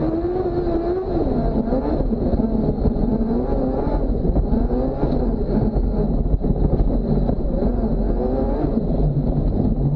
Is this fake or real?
real